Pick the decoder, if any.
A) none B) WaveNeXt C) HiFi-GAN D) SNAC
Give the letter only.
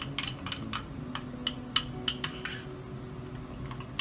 A